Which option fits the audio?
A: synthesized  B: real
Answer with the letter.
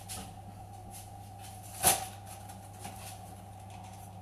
B